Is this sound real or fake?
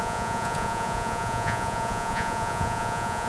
fake